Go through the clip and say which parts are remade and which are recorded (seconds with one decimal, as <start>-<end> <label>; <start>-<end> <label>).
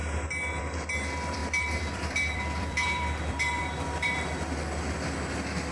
0.0-1.4 recorded; 1.4-4.4 remade; 4.4-5.7 recorded